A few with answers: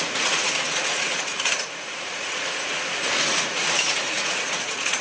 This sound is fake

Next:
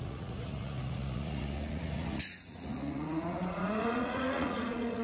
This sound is fake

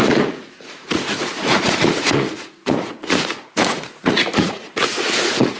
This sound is fake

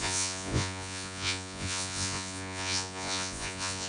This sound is fake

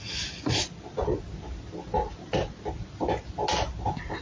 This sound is real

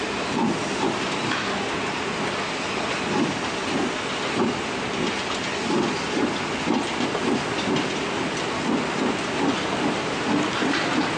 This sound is real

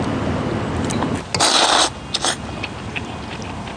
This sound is real